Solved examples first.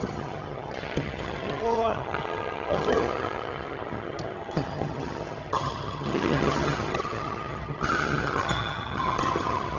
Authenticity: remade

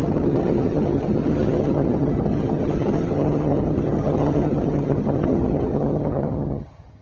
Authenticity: remade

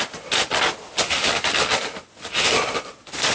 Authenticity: recorded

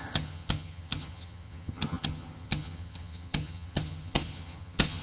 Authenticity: remade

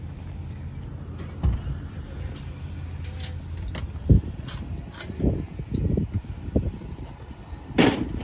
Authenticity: recorded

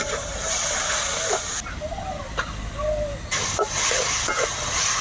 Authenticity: recorded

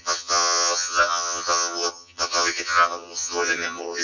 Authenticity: remade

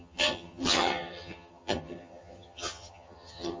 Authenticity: remade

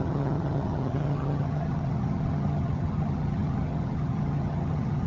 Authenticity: remade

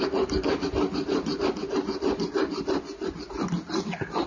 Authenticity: recorded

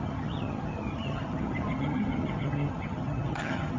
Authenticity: remade